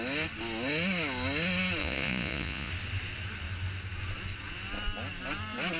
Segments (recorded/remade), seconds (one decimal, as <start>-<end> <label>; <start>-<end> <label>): 0.0-1.8 recorded; 1.8-2.7 remade; 2.7-5.8 recorded